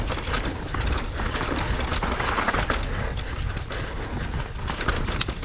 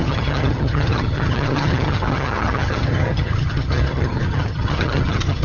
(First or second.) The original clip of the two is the first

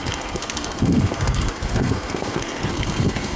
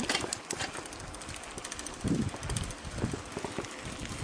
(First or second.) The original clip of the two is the second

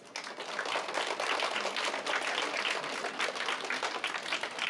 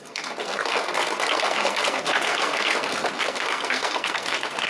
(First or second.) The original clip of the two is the first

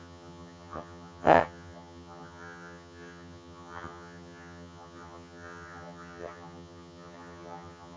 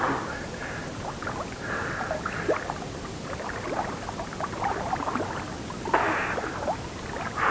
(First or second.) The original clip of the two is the second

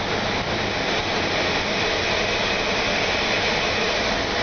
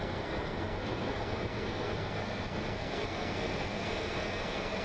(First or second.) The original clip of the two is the first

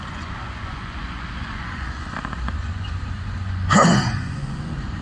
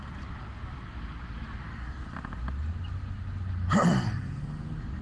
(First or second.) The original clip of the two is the second